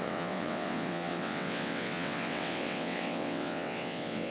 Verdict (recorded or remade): remade